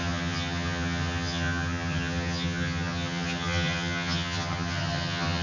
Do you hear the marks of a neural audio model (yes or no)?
yes